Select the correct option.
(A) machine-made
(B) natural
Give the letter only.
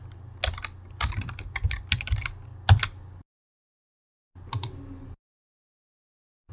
B